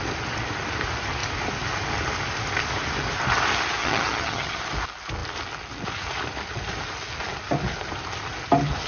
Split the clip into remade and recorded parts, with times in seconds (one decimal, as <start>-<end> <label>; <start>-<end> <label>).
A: 0.0-3.8 recorded; 3.8-4.6 remade; 4.6-8.9 recorded